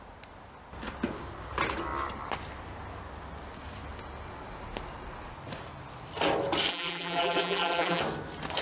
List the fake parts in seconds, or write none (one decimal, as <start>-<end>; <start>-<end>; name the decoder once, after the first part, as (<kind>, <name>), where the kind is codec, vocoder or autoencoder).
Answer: 6.7-8.0 (vocoder, BigVGAN v2)